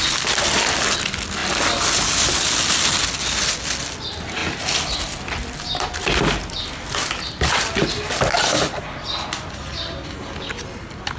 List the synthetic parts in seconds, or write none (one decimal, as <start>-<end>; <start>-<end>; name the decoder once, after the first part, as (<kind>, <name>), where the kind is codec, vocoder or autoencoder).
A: none